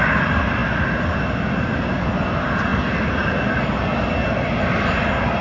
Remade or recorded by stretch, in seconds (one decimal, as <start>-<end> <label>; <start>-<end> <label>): 0.0-5.4 recorded